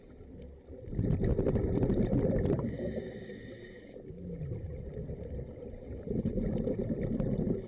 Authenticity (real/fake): real